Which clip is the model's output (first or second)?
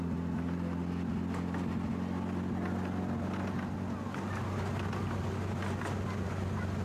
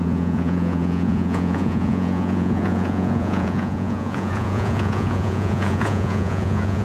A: second